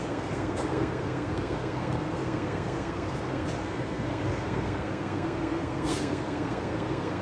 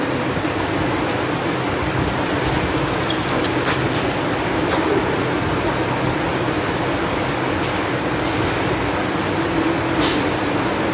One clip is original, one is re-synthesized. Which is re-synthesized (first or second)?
first